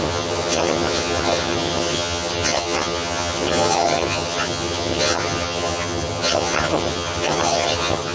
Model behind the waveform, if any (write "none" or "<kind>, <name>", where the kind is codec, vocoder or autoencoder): vocoder, HiFi-GAN